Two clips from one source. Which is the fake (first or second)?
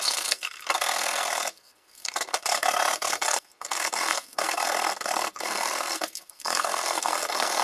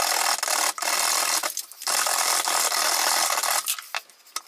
first